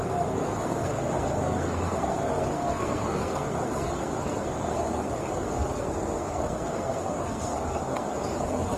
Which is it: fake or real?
fake